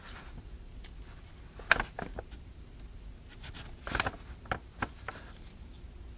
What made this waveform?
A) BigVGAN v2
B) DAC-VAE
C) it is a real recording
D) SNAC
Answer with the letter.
C